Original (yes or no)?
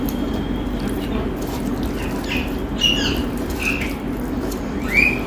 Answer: yes